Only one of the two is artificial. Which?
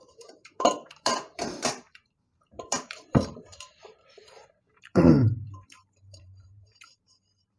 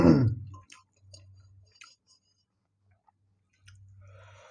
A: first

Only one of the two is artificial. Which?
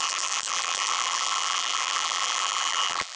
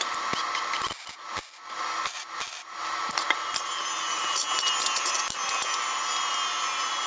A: first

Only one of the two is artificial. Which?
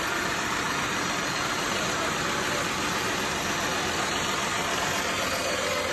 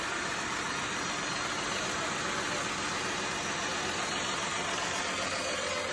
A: first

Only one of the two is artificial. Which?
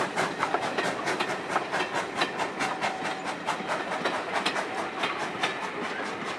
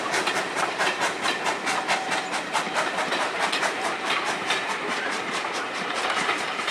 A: second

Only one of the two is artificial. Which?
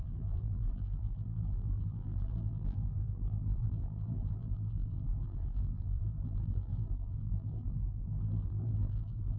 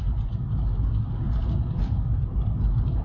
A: first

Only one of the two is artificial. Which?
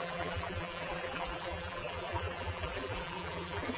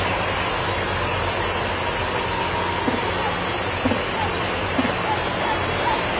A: first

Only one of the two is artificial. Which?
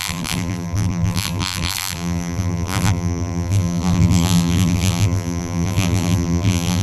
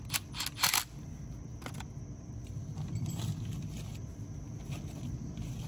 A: first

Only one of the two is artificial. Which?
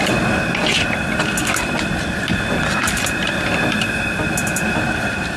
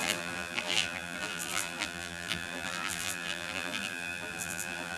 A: second